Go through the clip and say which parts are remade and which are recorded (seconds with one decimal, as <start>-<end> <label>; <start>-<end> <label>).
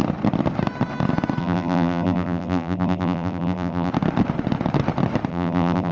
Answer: 0.0-1.4 recorded; 1.4-3.9 remade; 3.9-5.3 recorded; 5.3-5.9 remade